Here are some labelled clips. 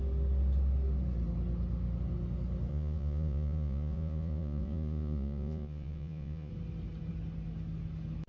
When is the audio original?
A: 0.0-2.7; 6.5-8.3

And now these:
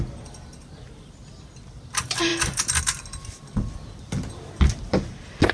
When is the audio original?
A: 0.0-5.5